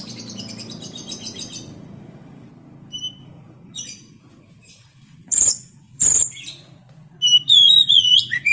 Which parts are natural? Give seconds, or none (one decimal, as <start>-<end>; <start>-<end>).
0.0-1.8; 2.5-3.2; 6.8-7.4